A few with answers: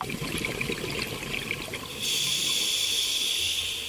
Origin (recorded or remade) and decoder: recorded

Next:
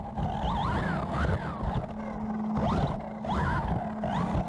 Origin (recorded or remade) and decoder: recorded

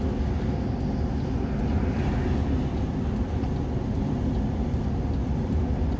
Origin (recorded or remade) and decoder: recorded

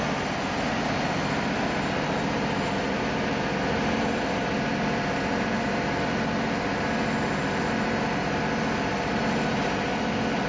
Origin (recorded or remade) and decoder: recorded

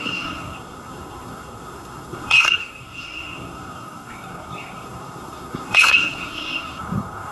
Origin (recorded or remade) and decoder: remade, codec, SNAC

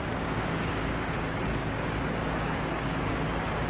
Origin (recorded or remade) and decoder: remade, codec, DAC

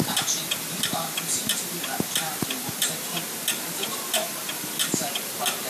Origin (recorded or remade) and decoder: remade, vocoder, BigVGAN v2